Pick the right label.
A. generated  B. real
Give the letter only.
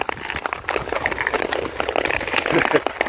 B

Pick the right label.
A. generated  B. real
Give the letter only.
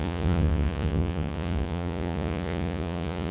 A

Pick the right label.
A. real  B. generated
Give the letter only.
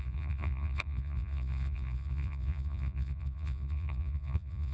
B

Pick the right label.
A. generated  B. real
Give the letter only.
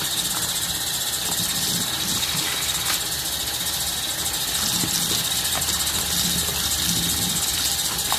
B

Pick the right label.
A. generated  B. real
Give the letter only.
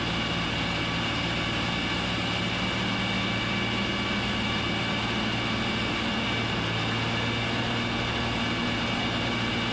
B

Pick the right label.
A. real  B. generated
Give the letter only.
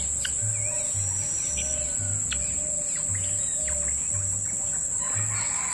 A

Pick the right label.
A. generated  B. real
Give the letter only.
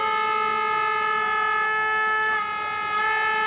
B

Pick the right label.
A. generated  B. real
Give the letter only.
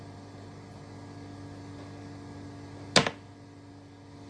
B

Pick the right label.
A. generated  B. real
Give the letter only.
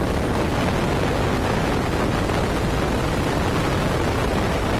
B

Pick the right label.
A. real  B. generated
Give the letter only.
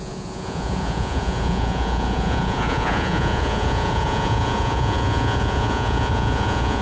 B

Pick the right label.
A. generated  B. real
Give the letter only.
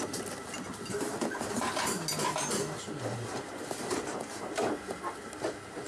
B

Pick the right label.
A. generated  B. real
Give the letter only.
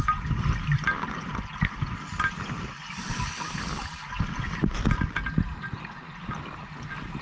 B